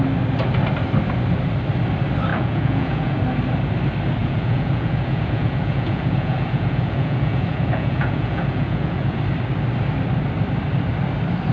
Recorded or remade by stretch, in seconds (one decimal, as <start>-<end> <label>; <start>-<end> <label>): 0.0-2.3 recorded; 2.3-3.2 remade; 3.2-4.2 recorded; 4.2-9.2 remade; 9.2-11.5 recorded